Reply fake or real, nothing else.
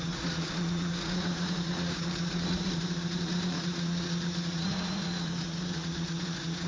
fake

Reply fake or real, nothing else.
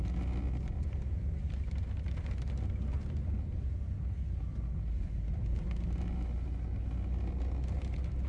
real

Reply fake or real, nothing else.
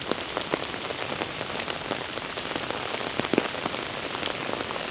real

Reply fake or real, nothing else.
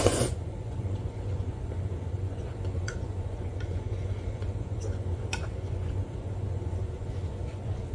fake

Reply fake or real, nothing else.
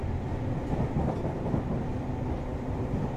real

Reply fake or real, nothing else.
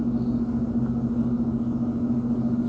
real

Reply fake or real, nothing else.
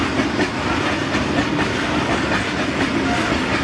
real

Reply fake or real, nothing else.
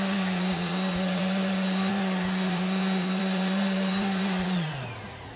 fake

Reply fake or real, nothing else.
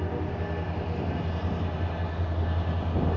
real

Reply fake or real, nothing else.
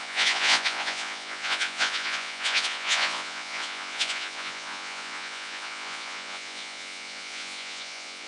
fake